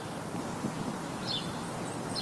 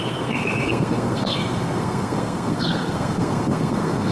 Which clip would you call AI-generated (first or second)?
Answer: second